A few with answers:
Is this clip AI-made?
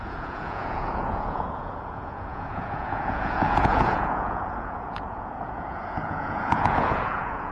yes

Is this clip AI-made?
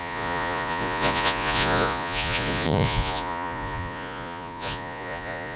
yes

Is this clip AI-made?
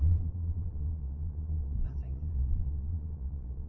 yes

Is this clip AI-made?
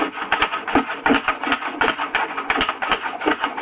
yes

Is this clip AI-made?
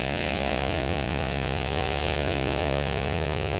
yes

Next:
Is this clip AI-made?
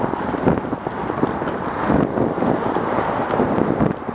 no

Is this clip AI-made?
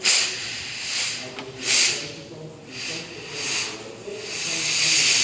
no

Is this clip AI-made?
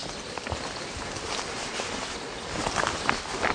no